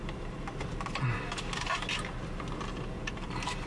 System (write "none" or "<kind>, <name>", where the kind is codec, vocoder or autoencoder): none